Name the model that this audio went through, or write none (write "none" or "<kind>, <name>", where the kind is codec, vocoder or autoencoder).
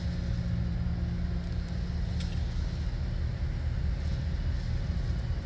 none